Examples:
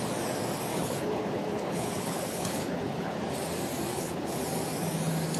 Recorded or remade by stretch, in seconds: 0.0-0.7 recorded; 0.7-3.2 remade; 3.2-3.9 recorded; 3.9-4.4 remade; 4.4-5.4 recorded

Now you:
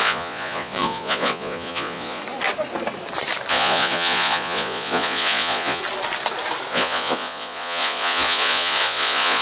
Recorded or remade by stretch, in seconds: 0.0-2.2 remade; 2.2-3.5 recorded; 3.5-5.8 remade; 5.8-6.7 recorded; 6.7-9.4 remade

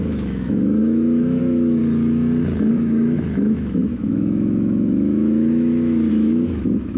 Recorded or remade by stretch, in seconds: 0.0-1.8 remade; 1.8-2.7 recorded; 2.7-7.0 remade

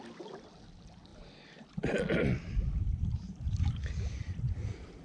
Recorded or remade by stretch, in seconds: 0.0-1.1 remade; 1.1-2.1 recorded; 2.1-5.0 remade